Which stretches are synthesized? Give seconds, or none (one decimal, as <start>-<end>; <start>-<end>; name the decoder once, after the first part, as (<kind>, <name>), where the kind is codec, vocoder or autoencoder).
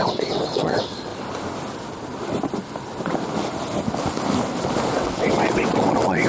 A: 0.0-1.1 (vocoder, WaveNeXt); 4.9-6.3